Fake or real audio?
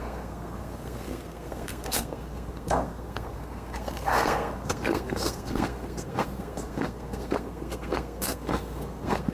fake